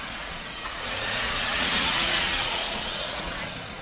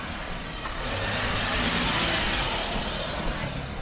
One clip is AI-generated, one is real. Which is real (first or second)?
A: second